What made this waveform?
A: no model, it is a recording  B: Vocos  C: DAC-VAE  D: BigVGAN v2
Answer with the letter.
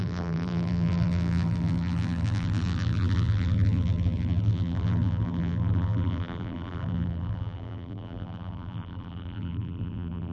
D